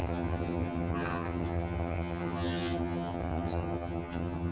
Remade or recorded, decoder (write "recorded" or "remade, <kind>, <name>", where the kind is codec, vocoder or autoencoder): remade, vocoder, HiFi-GAN